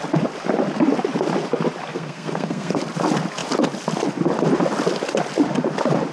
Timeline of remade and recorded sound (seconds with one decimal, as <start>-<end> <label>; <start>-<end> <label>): 0.0-1.9 recorded; 1.9-2.8 remade; 2.8-6.1 recorded